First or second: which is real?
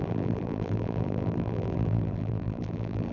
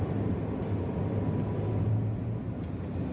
second